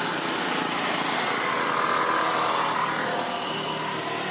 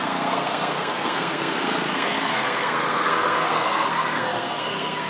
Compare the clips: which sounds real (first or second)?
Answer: first